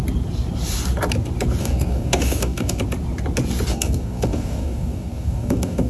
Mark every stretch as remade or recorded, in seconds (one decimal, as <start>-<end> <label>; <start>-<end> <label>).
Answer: 0.0-1.6 recorded; 1.6-2.8 remade; 2.8-3.7 recorded; 3.7-5.9 remade